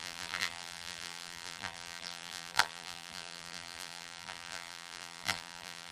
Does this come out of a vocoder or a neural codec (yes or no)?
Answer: yes